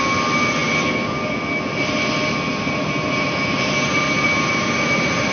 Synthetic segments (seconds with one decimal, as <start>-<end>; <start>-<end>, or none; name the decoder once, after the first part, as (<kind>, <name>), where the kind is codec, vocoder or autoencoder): 2.5-5.3 (vocoder, BigVGAN v2)